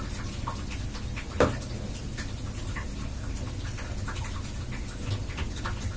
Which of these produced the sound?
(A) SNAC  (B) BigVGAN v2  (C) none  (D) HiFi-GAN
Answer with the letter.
C